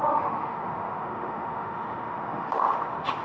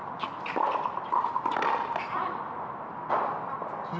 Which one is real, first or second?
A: second